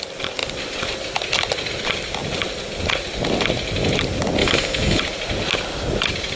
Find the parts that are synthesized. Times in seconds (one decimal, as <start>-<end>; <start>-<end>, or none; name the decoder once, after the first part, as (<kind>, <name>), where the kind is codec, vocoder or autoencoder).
4.4-5.0 (autoencoder, DAC-VAE)